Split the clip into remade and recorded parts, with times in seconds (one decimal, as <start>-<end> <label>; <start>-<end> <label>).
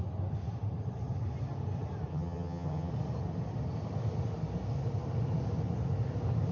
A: 0.0-2.1 recorded; 2.1-2.9 remade; 2.9-6.5 recorded